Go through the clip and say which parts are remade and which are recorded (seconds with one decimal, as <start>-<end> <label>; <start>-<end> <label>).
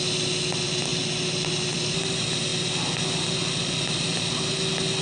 0.0-5.0 recorded